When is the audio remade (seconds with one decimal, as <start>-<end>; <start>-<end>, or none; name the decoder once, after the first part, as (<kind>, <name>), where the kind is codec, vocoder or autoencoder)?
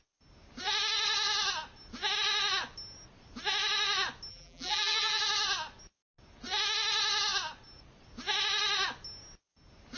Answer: 4.3-5.2 (vocoder, BigVGAN v2)